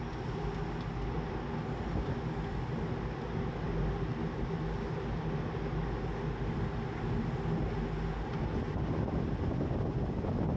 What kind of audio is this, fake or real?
real